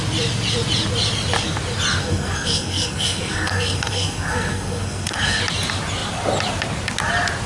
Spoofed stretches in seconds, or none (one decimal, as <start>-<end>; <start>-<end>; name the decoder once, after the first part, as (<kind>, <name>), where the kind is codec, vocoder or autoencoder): 2.0-5.4 (codec, SNAC)